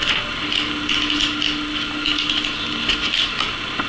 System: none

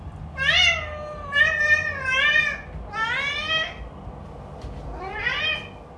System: none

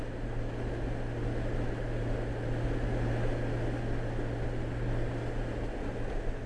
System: none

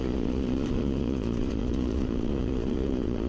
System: vocoder, Vocos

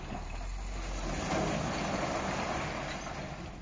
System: none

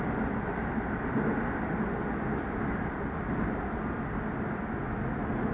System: none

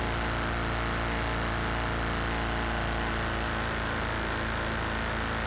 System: none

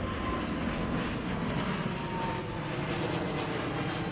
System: none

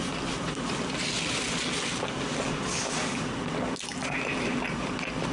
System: none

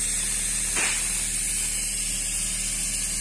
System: none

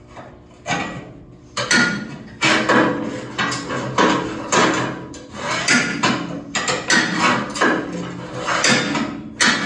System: none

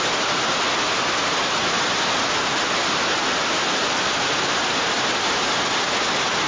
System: none